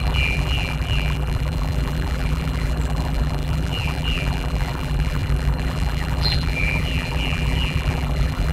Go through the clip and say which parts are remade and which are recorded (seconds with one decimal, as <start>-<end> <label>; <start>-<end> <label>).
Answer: 0.0-8.5 remade